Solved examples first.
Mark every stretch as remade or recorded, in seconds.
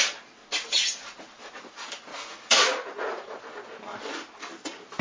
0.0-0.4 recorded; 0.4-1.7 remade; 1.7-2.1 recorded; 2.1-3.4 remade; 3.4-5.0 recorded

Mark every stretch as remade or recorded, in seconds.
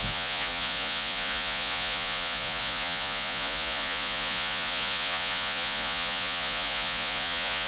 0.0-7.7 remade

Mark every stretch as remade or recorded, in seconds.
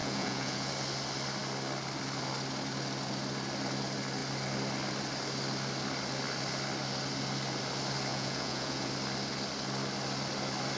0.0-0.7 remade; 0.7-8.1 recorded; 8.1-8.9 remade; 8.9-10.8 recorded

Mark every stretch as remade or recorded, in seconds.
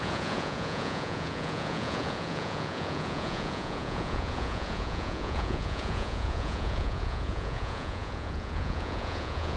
0.0-9.6 remade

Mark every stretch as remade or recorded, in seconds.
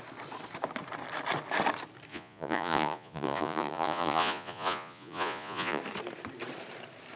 0.0-2.1 recorded; 2.1-5.8 remade; 5.8-7.2 recorded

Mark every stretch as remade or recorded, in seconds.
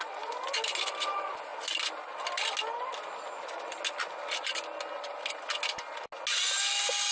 0.0-7.1 recorded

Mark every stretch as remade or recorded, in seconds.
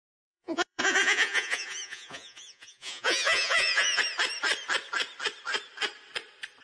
0.0-4.0 remade; 4.0-6.6 recorded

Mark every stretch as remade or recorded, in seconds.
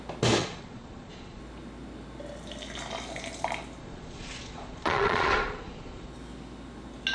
0.0-0.4 recorded; 0.4-1.4 remade; 1.4-3.8 recorded; 3.8-6.1 remade; 6.1-7.1 recorded